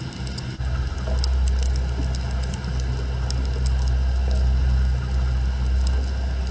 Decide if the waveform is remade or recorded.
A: recorded